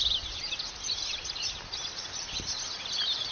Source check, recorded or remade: recorded